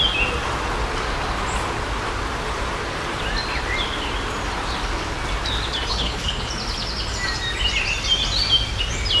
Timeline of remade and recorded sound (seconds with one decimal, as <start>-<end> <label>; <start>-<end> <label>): 0.0-5.9 recorded; 5.9-6.5 remade; 6.5-9.2 recorded